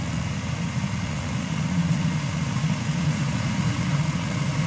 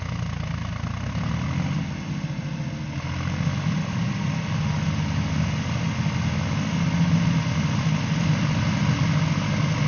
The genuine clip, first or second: second